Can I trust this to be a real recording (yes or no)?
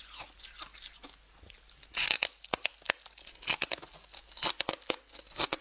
yes